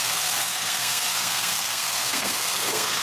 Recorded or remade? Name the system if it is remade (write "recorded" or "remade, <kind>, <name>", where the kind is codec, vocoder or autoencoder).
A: remade, codec, SNAC